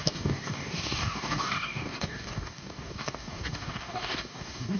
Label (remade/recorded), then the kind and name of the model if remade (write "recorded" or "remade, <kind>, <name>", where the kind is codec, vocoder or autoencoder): remade, codec, DAC